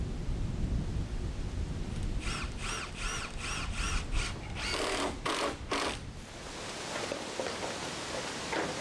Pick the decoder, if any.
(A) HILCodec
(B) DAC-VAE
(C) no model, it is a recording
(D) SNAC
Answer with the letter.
C